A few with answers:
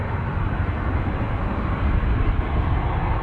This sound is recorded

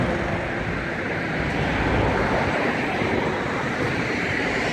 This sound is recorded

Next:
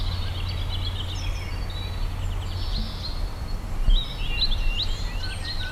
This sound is recorded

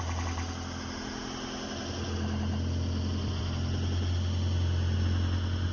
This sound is recorded